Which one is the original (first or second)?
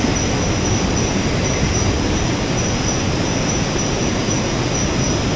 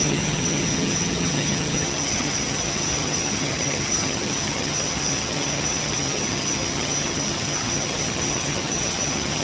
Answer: first